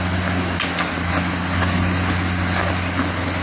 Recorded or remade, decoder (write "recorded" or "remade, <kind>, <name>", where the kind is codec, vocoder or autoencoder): recorded